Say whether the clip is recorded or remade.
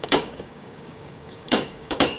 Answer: remade